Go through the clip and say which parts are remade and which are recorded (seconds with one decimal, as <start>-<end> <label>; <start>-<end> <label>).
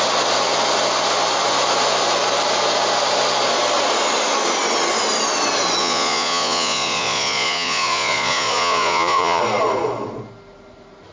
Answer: 0.0-5.8 recorded; 5.8-9.4 remade; 9.4-11.1 recorded